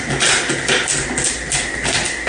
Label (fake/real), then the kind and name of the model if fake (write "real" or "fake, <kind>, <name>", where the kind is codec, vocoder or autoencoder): real